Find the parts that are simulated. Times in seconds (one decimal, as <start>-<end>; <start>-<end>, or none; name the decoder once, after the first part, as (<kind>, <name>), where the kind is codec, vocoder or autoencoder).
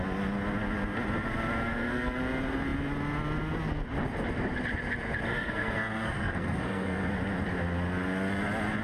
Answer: 1.6-2.2 (codec, SNAC); 5.3-7.1